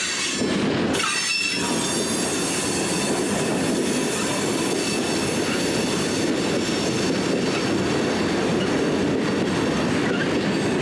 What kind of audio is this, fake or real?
real